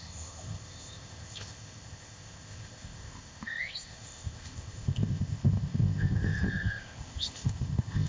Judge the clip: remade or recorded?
remade